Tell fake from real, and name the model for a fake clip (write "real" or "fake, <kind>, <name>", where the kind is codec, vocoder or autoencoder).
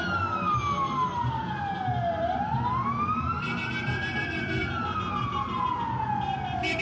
real